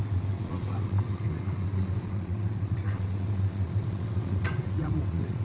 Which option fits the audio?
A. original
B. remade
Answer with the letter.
B